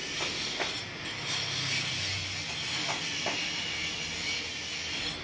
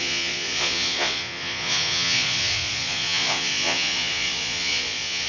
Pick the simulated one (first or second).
second